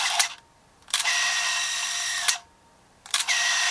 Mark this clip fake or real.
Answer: fake